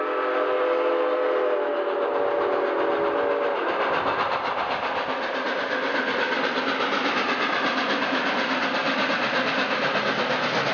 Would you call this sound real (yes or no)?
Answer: yes